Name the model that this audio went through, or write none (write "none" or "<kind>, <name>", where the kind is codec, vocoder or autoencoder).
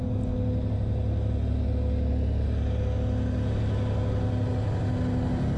none